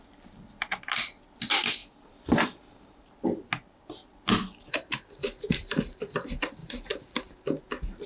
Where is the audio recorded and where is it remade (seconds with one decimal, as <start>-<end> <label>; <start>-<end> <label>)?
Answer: 0.0-1.8 recorded; 1.8-3.1 remade; 3.1-5.2 recorded; 5.2-5.8 remade; 5.8-6.6 recorded; 6.6-7.6 remade; 7.6-8.1 recorded